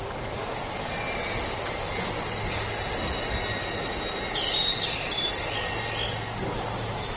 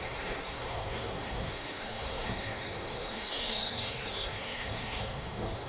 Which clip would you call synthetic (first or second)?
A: second